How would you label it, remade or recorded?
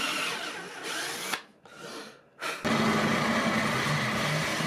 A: recorded